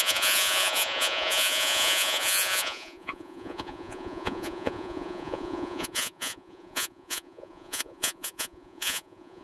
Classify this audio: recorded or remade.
remade